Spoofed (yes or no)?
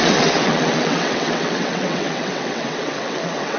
yes